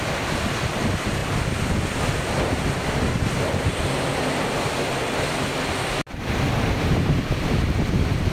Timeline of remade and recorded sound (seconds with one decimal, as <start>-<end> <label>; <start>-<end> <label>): 0.0-8.3 recorded